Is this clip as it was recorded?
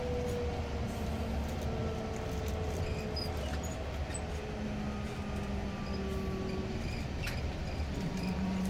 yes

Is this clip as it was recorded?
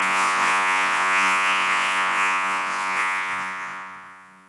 no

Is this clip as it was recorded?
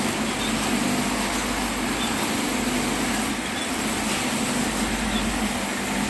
yes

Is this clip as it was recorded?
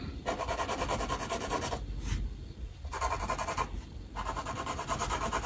yes